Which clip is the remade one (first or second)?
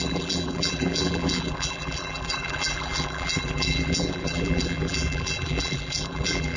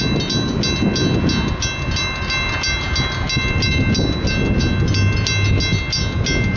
first